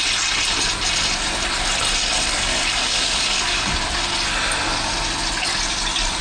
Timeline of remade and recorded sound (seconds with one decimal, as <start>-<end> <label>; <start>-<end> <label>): 0.0-2.3 recorded; 2.3-3.7 remade; 3.7-6.2 recorded